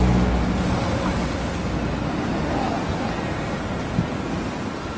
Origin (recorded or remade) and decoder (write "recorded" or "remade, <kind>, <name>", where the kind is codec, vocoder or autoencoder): recorded